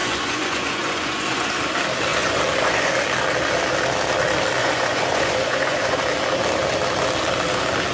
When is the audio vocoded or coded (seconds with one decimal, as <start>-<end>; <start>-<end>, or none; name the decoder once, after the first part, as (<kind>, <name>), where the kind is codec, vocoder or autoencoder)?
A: 0.0-1.5 (vocoder, Vocos); 2.1-2.9; 4.6-6.0